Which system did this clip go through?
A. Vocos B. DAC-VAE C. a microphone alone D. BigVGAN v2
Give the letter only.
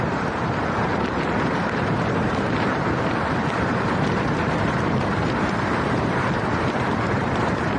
D